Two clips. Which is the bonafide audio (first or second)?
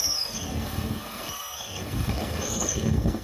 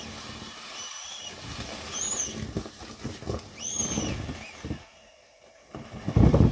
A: second